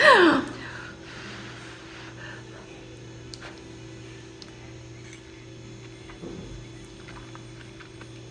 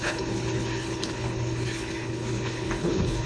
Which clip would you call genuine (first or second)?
first